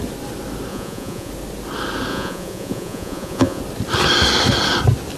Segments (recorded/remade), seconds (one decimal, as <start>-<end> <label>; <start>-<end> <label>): 0.0-0.7 recorded; 0.7-1.3 remade; 1.3-2.1 recorded; 2.1-3.6 remade; 3.6-5.2 recorded